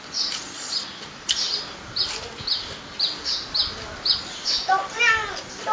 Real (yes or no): yes